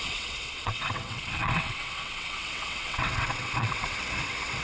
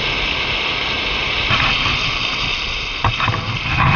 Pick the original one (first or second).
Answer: second